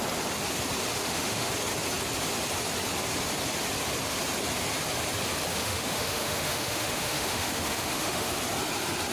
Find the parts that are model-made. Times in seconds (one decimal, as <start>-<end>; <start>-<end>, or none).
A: 0.9-1.5; 5.5-8.3